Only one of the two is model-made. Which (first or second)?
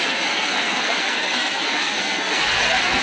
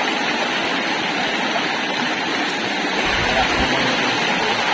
first